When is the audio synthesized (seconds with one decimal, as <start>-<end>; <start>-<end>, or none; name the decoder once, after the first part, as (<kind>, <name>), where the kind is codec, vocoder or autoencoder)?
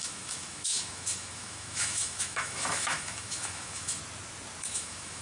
0.0-4.0 (autoencoder, DAC-VAE); 4.6-5.2